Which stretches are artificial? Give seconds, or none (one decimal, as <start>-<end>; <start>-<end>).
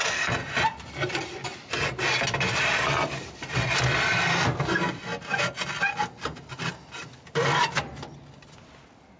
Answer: none